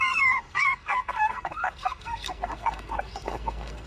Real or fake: fake